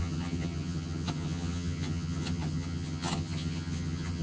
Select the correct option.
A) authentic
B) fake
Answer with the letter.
B